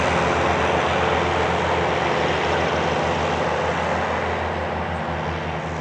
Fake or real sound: real